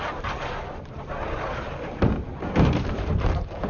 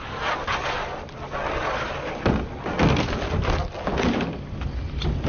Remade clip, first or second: first